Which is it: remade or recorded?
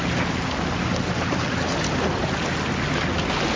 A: recorded